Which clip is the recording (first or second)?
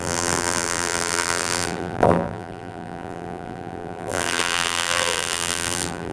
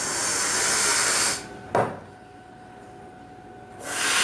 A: second